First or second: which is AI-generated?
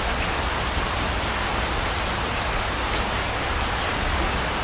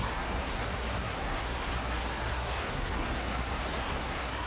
second